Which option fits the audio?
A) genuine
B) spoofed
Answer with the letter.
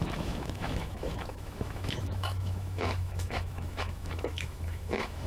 B